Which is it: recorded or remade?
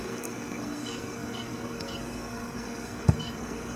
remade